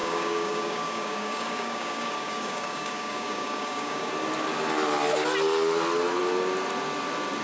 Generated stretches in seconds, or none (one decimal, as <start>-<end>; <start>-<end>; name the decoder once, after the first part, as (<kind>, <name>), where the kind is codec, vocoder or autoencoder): 0.0-4.1 (codec, DAC)